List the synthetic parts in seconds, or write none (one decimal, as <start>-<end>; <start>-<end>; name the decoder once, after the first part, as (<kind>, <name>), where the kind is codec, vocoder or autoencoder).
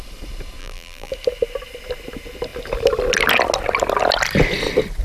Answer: 0.6-1.1 (vocoder, BigVGAN v2)